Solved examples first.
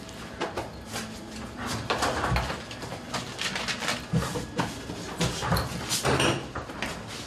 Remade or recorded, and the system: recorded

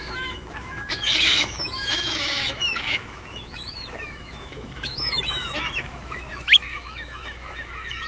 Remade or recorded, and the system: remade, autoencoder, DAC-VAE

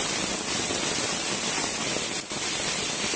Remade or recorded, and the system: recorded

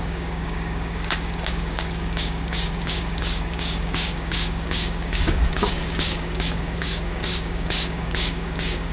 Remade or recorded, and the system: remade, codec, DAC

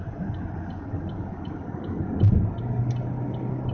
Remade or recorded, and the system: recorded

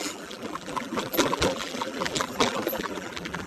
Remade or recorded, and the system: remade, vocoder, BigVGAN v2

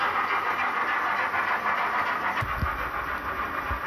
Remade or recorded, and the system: recorded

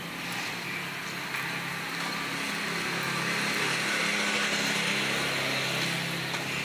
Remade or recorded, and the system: recorded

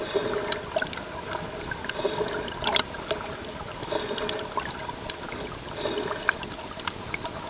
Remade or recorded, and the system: recorded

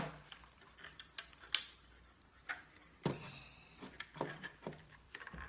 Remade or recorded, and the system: remade, vocoder, BigVGAN v2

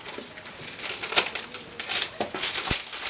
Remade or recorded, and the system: recorded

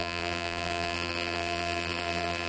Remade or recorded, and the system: remade, vocoder, BigVGAN v2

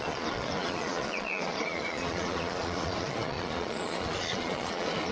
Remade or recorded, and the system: remade, vocoder, Vocos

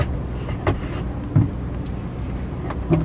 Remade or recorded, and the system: recorded